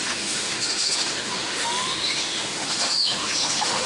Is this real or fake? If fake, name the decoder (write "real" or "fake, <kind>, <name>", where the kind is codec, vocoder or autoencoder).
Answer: fake, autoencoder, DAC-VAE